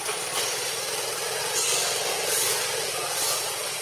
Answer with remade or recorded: recorded